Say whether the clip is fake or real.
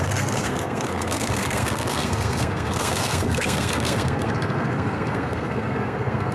fake